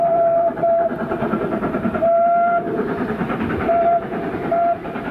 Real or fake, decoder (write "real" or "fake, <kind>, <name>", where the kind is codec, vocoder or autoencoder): fake, vocoder, BigVGAN v2